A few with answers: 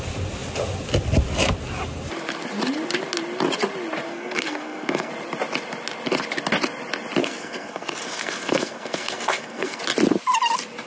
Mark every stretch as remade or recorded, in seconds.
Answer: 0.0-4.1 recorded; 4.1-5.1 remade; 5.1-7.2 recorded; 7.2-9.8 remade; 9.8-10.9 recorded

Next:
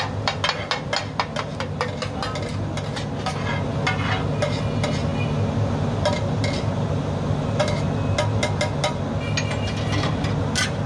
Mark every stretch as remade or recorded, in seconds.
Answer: 0.0-10.9 recorded

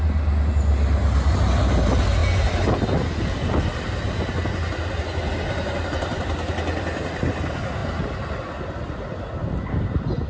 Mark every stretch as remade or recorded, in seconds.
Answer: 0.0-10.3 recorded

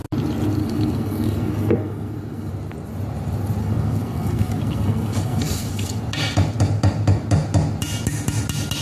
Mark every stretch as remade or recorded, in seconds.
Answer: 0.0-0.6 recorded; 0.6-2.5 remade; 2.5-3.6 recorded; 3.6-6.0 remade; 6.0-8.8 recorded